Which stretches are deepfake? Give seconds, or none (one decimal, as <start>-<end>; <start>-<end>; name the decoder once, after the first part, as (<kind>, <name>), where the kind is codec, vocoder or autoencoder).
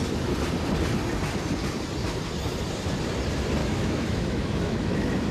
3.6-5.3 (autoencoder, DAC-VAE)